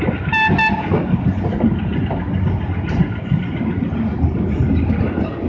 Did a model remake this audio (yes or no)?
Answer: no